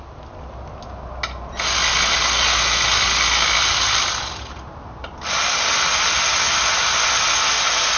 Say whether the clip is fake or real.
real